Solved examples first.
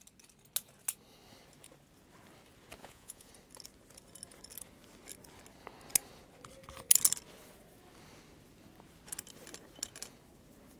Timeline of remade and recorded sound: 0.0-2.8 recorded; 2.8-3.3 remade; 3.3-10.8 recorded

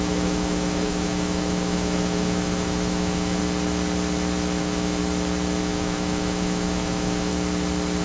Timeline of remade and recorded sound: 0.0-3.4 remade; 3.4-4.6 recorded; 4.6-5.0 remade; 5.0-5.6 recorded; 5.6-7.3 remade; 7.3-8.0 recorded

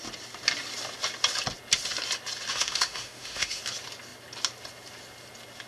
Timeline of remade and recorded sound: 0.0-2.5 recorded; 2.5-3.6 remade; 3.6-5.7 recorded

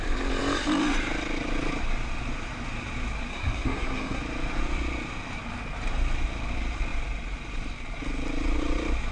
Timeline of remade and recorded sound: 0.0-3.3 recorded; 3.3-4.2 remade; 4.2-9.1 recorded